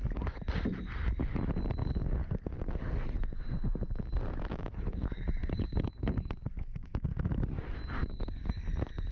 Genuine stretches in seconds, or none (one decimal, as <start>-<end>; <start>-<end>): 0.0-1.8; 2.7-4.5; 7.3-8.0; 8.5-9.1